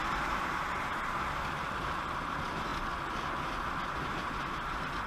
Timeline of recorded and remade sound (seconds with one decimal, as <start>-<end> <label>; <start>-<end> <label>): 0.0-0.9 remade; 0.9-2.2 recorded; 2.2-2.7 remade; 2.7-4.2 recorded; 4.2-5.1 remade